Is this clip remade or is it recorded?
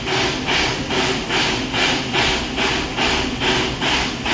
recorded